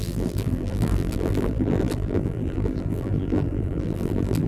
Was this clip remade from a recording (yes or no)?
yes